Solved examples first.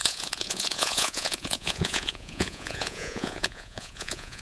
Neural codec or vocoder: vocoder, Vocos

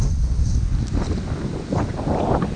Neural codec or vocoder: none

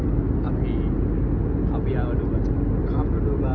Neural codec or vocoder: none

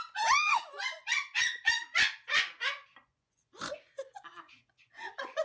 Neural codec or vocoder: vocoder, Vocos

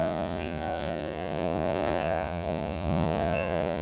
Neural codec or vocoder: vocoder, Vocos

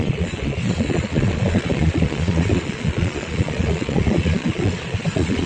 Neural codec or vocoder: vocoder, Vocos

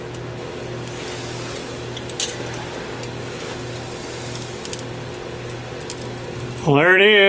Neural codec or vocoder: none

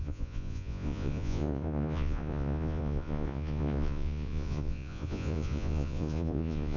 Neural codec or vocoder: vocoder, Vocos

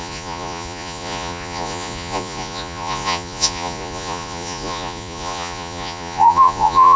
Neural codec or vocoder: vocoder, Vocos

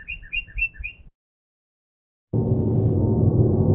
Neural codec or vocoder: none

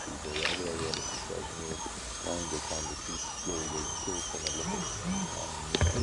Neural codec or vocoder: none